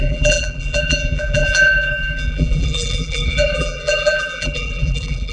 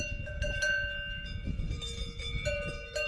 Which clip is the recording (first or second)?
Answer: second